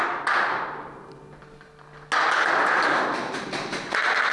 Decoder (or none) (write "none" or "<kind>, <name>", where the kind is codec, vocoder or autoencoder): none